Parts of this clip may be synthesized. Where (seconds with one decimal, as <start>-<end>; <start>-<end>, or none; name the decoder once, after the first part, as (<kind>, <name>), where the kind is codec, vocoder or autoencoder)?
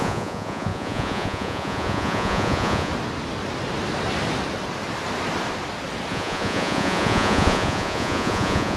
0.0-2.9 (vocoder, Vocos); 6.1-8.8